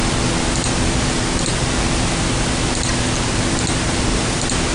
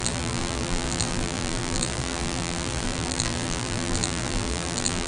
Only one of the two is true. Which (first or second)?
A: first